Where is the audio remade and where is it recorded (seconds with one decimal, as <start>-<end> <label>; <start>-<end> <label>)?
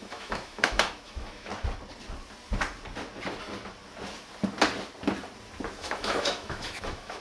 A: 0.0-1.5 remade; 1.5-5.8 recorded; 5.8-7.2 remade